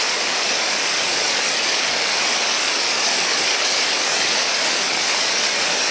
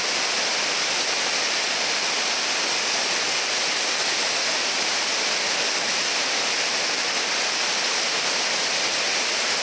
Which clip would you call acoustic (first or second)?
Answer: second